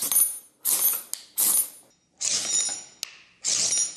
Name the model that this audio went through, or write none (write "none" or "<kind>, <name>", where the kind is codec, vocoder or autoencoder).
none